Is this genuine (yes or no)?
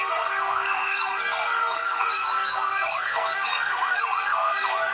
no